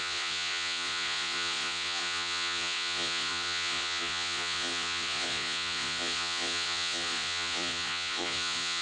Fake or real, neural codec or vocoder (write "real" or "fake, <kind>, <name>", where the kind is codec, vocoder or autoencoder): fake, vocoder, Vocos